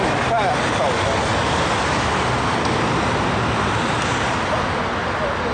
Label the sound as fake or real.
real